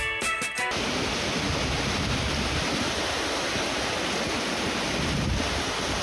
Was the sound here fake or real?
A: real